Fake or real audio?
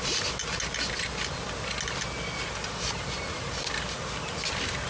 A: real